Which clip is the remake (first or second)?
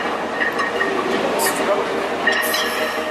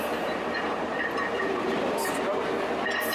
second